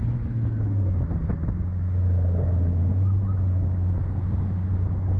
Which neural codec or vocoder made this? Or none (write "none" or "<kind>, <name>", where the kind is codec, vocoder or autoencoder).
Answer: none